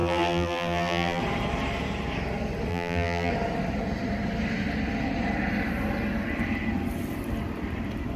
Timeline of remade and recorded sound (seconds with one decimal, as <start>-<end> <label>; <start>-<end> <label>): 0.0-1.2 remade; 1.2-2.7 recorded; 2.7-3.3 remade; 3.3-8.2 recorded